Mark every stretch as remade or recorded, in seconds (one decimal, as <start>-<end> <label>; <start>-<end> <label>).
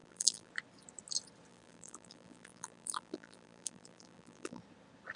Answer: 0.0-0.5 remade; 0.5-1.5 recorded; 1.5-4.6 remade; 4.6-5.2 recorded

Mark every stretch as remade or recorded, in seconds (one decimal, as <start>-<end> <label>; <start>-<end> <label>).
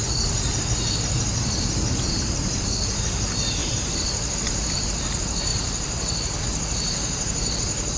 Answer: 0.0-8.0 remade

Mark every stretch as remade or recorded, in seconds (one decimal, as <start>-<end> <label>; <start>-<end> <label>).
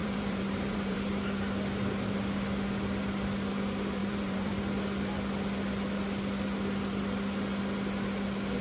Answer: 0.0-1.2 remade; 1.2-4.0 recorded; 4.0-4.6 remade; 4.6-8.6 recorded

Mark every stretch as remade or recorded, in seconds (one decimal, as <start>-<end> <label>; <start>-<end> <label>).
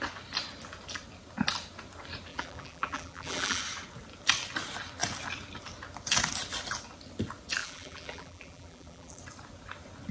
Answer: 0.0-2.3 recorded; 2.3-3.6 remade; 3.6-7.6 recorded; 7.6-9.2 remade; 9.2-10.1 recorded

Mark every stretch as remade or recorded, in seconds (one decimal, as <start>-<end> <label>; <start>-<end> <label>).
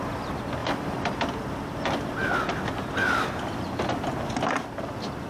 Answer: 0.0-0.6 recorded; 0.6-1.2 remade; 1.2-5.3 recorded